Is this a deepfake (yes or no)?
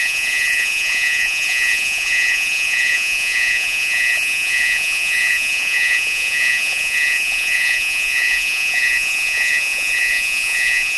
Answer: yes